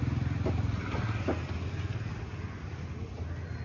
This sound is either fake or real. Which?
real